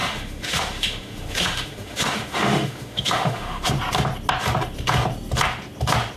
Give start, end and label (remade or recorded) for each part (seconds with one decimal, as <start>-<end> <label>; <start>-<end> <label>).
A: 0.0-3.7 remade; 3.7-6.2 recorded